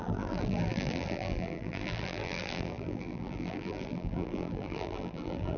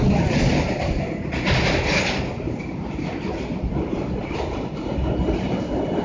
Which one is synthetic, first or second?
first